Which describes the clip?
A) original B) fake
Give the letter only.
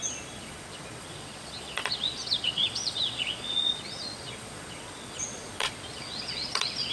B